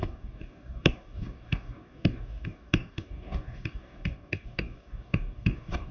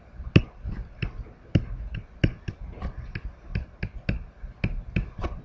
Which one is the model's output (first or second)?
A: first